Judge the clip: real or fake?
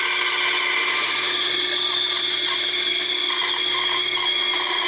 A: real